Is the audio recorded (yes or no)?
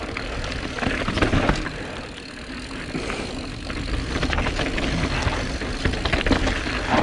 yes